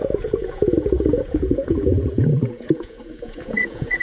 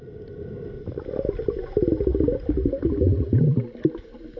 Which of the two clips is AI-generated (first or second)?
first